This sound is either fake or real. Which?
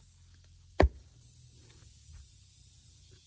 real